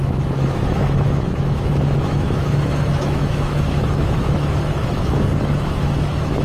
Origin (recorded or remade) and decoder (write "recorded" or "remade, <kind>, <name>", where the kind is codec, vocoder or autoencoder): remade, autoencoder, DAC-VAE